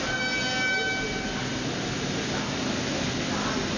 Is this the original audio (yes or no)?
yes